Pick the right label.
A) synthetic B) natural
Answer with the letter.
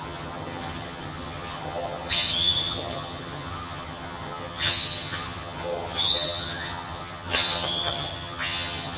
A